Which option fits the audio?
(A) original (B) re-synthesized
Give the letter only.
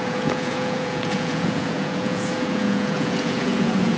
B